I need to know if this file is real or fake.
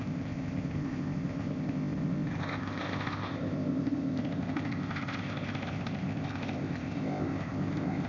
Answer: fake